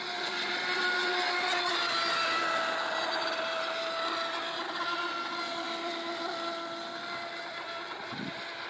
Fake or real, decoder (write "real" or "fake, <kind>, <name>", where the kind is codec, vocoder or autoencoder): real